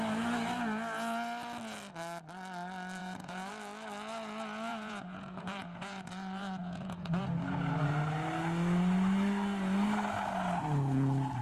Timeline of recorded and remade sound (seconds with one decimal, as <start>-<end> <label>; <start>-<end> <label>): 0.0-3.0 recorded; 3.0-3.5 remade; 3.5-4.7 recorded; 4.7-7.2 remade; 7.2-11.4 recorded